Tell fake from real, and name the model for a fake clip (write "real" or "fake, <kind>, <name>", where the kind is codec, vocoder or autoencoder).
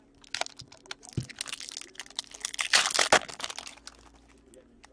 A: real